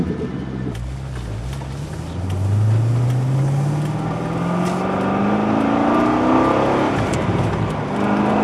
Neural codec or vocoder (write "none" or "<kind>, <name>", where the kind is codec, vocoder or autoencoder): none